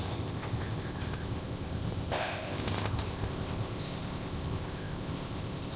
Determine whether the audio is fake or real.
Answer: fake